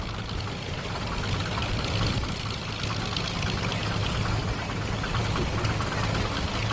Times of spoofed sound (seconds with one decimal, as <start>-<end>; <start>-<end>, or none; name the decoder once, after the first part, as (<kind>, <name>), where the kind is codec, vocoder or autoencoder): none